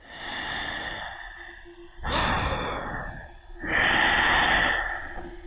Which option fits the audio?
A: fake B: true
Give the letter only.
B